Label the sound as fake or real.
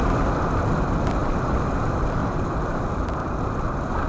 fake